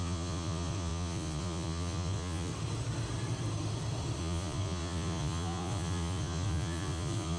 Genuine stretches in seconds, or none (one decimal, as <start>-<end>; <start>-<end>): 2.5-4.2